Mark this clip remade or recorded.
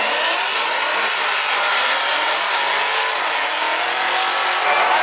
recorded